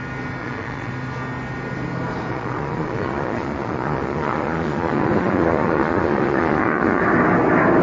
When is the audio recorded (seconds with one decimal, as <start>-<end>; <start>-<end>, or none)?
0.0-0.4; 0.9-2.3; 7.0-7.8